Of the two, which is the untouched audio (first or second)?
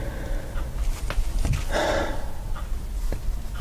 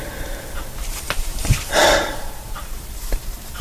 first